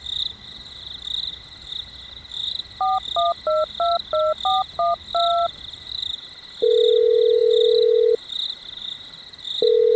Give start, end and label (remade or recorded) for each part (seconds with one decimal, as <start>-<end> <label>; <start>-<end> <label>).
0.0-10.0 recorded